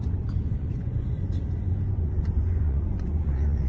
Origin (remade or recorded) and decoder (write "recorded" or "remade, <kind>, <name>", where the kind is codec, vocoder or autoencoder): remade, vocoder, Vocos